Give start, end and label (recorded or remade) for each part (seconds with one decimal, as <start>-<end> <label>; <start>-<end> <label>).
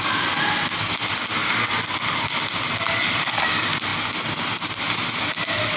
0.0-5.8 recorded